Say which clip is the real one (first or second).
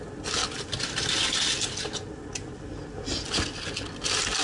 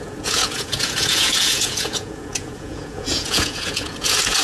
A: first